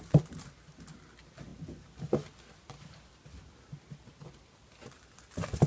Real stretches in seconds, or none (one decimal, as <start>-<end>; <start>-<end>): 0.0-5.7